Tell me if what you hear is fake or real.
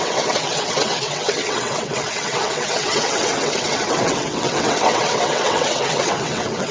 fake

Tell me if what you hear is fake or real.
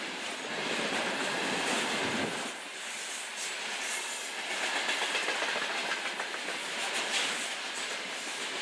real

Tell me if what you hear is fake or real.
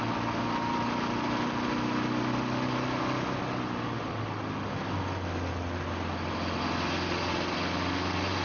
real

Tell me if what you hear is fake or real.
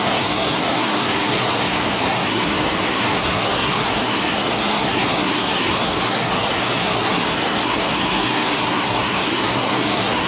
fake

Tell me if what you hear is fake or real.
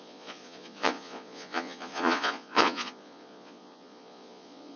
fake